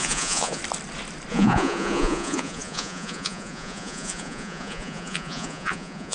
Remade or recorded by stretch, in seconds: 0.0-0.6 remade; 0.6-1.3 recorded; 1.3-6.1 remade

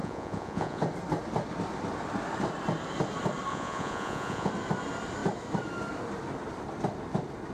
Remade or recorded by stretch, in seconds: 0.0-0.8 remade; 0.8-3.5 recorded; 3.5-4.5 remade; 4.5-7.5 recorded

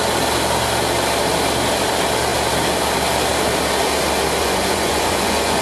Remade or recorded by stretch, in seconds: 0.0-4.4 recorded; 4.4-5.6 remade

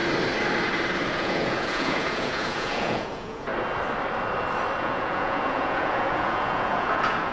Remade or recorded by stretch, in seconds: 0.0-1.1 recorded; 1.1-3.5 remade; 3.5-4.8 recorded; 4.8-7.3 remade